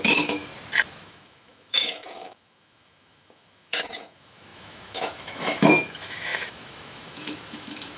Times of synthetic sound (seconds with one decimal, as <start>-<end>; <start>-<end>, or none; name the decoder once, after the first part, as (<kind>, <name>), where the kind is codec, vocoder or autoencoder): 0.0-0.5 (autoencoder, DAC-VAE); 1.0-8.0